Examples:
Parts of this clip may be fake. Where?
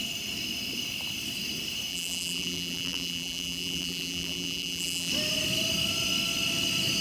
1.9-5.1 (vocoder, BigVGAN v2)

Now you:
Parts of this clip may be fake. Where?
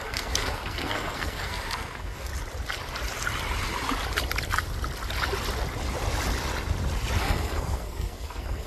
0.0-2.3 (codec, SNAC); 7.2-8.7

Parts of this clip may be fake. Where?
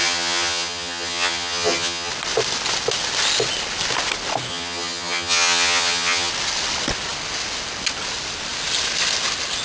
0.0-2.1 (vocoder, HiFi-GAN); 4.5-6.3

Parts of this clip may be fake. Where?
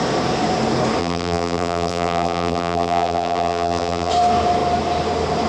1.0-4.1 (vocoder, BigVGAN v2)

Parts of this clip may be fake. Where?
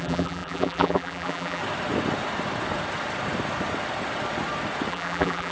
0.0-1.6 (vocoder, BigVGAN v2); 4.9-5.5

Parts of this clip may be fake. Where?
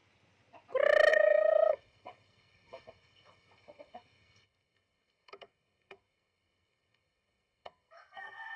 1.1-8.6 (codec, SNAC)